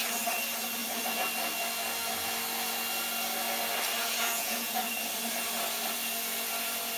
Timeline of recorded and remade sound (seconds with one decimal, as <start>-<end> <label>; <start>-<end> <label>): 0.0-4.0 recorded; 4.0-4.8 remade; 4.8-7.0 recorded